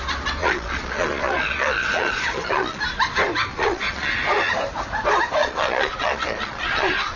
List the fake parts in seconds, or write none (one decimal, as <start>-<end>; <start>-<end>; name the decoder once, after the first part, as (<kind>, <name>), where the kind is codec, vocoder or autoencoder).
0.4-2.8 (vocoder, Vocos); 3.5-4.1; 5.4-7.2